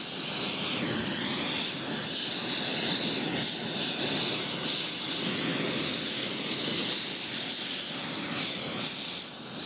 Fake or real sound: real